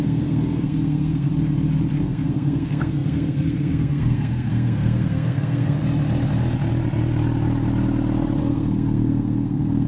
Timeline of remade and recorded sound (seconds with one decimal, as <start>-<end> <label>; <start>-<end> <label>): 0.0-1.3 remade; 1.3-2.0 recorded; 2.0-5.8 remade; 5.8-8.4 recorded; 8.4-9.9 remade